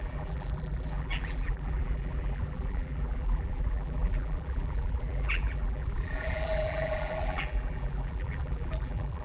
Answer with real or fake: fake